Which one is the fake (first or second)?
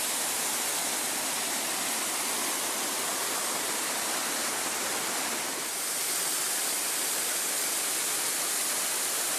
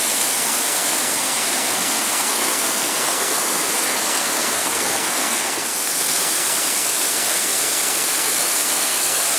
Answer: second